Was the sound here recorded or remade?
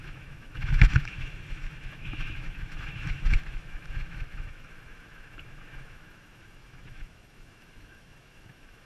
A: remade